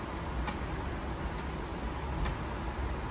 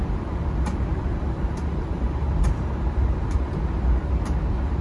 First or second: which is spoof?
second